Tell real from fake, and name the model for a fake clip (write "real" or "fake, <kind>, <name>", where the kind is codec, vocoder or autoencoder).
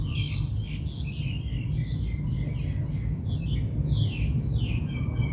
real